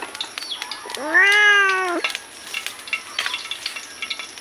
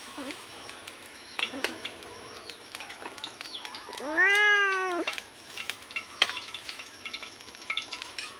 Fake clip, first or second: second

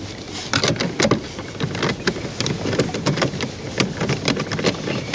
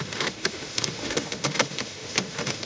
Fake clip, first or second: second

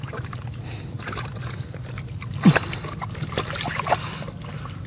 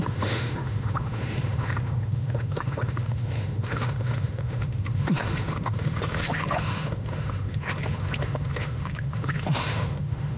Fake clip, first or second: second